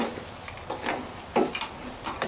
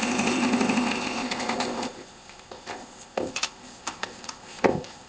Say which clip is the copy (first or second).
second